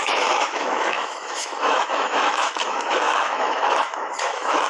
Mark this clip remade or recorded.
remade